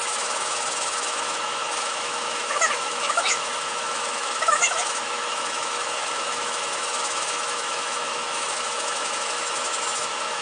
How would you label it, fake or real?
fake